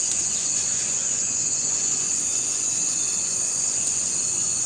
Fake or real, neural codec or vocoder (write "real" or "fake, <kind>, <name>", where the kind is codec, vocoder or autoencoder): fake, vocoder, Vocos